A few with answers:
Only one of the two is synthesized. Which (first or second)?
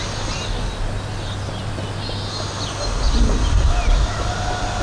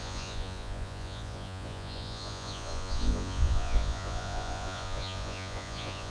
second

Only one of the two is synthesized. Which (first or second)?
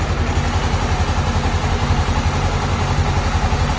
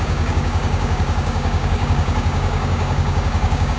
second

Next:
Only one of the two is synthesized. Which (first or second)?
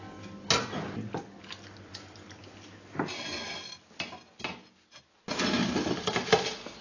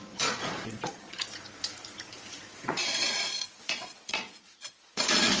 second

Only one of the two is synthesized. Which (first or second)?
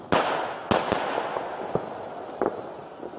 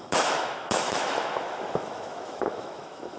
second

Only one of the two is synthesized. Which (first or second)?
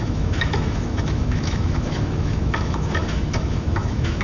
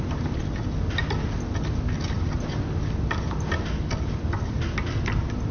first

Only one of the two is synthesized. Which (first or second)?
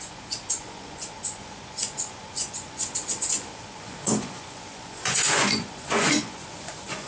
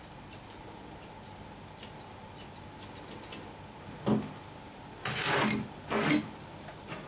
first